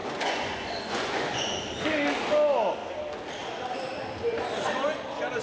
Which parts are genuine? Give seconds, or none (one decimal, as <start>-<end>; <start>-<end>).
1.6-5.4

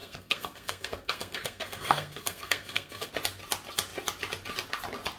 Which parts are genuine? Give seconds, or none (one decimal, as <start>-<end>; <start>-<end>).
3.1-5.2